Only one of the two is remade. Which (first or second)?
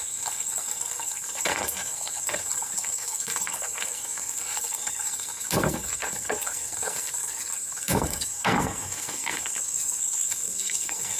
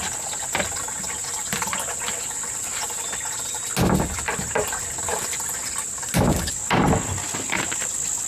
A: first